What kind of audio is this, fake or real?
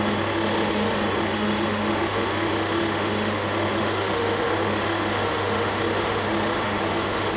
fake